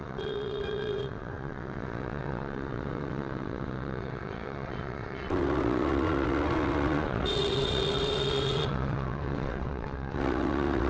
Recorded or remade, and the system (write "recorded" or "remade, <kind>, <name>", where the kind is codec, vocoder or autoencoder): remade, vocoder, WaveNeXt